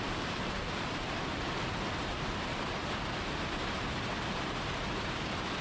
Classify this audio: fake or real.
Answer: real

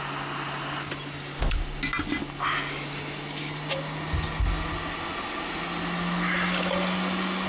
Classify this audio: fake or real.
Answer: real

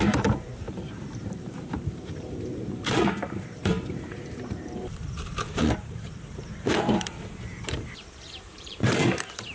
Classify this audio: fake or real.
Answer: fake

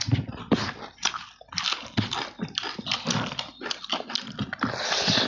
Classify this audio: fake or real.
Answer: real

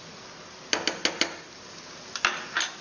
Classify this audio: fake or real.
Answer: real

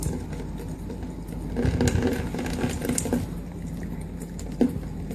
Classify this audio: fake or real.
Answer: real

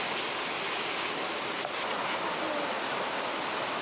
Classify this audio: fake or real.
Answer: real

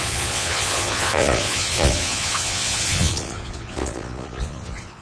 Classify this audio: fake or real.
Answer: fake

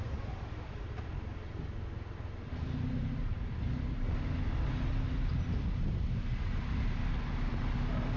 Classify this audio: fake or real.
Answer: real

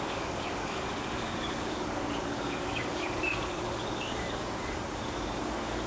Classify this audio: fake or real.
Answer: fake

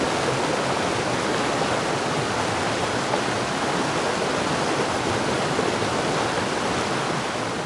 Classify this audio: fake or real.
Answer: real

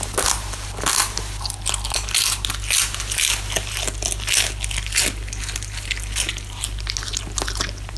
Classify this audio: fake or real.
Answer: real